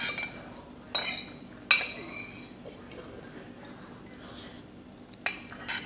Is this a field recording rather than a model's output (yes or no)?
yes